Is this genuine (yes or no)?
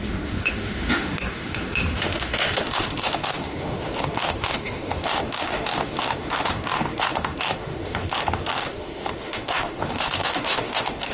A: no